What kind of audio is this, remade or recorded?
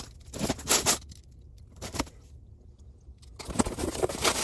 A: recorded